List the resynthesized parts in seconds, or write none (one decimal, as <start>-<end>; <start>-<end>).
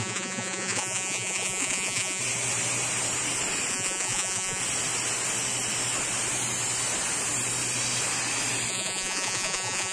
0.0-2.2; 3.7-4.6; 8.7-9.9